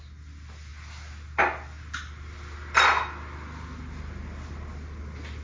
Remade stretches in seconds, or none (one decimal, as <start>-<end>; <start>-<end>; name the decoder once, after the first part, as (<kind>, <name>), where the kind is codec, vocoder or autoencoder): none